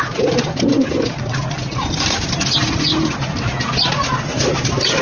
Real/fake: real